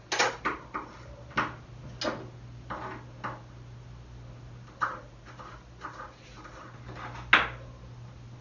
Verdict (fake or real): real